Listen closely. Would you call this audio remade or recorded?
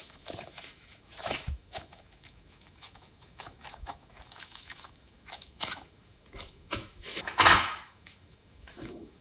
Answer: remade